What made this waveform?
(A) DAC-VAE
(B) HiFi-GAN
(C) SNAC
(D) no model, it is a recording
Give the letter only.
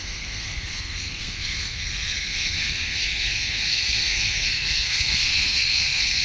C